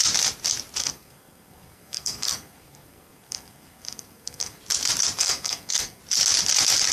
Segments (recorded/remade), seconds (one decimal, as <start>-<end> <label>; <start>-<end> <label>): 0.0-0.8 recorded; 0.8-4.6 remade; 4.6-5.2 recorded; 5.2-6.0 remade; 6.0-6.9 recorded